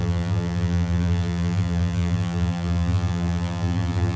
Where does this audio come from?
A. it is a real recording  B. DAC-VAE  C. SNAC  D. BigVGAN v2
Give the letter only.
D